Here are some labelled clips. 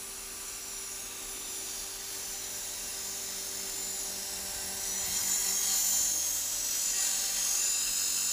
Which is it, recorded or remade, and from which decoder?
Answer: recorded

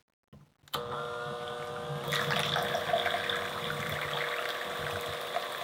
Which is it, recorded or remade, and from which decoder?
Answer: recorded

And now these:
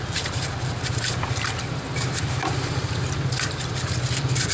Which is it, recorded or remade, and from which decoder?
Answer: remade, vocoder, BigVGAN v2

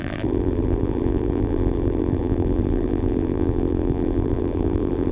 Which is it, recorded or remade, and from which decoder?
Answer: remade, vocoder, BigVGAN v2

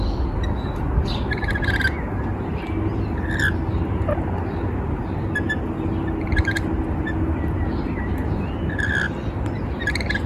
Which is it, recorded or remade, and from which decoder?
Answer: recorded